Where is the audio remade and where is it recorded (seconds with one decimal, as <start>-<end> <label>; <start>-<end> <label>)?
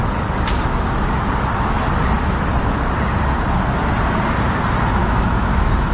0.0-5.0 recorded; 5.0-5.9 remade